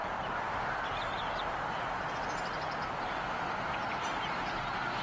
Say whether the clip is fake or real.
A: real